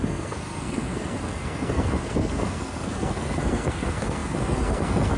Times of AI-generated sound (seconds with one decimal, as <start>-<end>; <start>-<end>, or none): 0.0-5.2